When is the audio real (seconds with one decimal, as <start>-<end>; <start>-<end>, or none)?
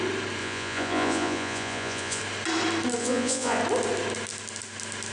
0.0-0.4; 2.2-3.0; 3.6-5.1